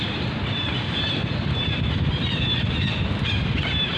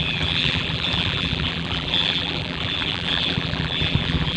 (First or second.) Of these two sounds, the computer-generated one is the second